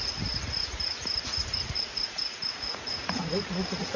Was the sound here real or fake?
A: fake